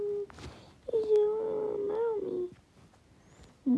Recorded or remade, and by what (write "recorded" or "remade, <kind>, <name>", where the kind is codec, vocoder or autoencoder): recorded